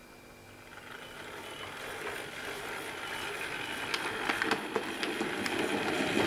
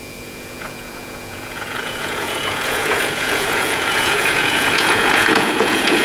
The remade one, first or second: second